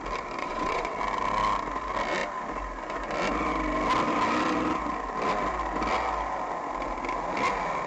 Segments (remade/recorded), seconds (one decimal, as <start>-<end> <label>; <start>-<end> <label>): 0.0-0.4 recorded; 0.4-1.0 remade; 1.0-7.9 recorded